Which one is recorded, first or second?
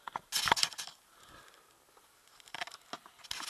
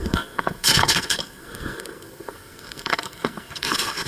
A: first